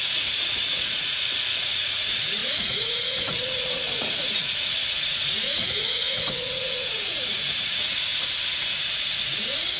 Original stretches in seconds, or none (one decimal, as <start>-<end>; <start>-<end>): none